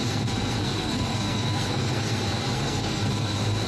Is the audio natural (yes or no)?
no